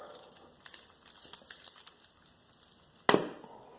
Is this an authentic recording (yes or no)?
yes